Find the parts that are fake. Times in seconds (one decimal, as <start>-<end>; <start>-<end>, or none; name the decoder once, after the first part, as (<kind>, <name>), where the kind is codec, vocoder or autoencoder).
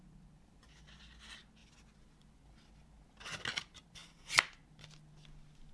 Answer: none